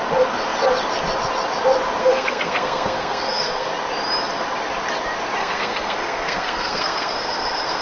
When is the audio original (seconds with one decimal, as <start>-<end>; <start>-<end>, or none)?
0.0-2.0; 3.7-5.4